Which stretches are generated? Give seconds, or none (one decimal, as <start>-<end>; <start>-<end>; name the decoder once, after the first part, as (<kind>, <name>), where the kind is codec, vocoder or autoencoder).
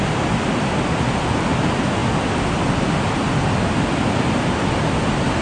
none